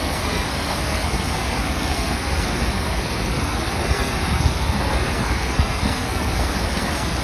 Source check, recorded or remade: remade